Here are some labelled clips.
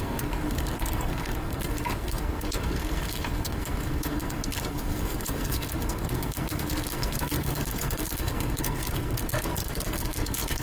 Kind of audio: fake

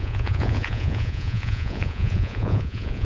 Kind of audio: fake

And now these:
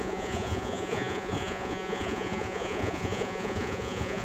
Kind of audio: fake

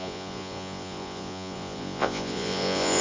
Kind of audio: fake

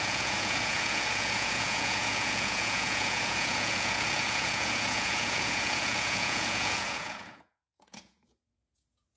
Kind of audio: fake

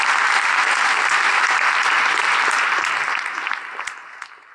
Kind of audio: real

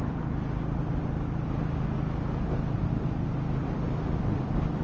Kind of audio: real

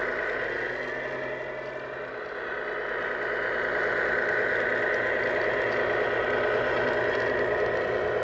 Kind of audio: real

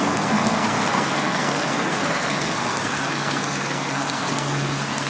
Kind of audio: fake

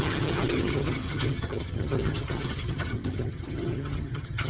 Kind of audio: fake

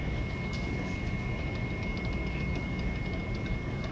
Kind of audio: fake